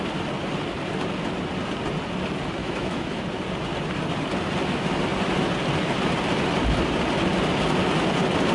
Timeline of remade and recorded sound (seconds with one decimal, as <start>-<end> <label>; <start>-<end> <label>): 0.0-2.6 recorded; 2.6-3.2 remade; 3.2-8.5 recorded

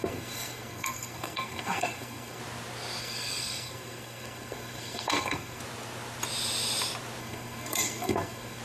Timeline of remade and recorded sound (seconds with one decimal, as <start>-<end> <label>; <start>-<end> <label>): 0.0-2.4 remade; 2.4-3.0 recorded; 3.0-5.6 remade; 5.6-7.2 recorded; 7.2-8.6 remade